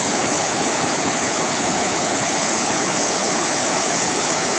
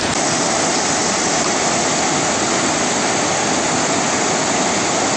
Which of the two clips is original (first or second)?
second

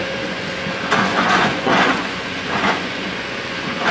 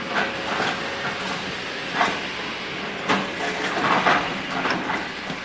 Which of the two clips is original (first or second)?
second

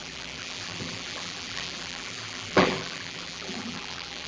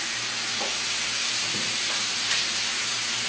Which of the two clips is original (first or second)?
second